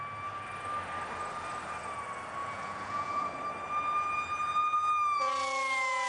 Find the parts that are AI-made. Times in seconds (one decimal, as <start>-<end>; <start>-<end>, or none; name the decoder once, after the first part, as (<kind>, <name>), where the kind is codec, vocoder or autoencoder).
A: 2.4-3.3 (vocoder, Vocos)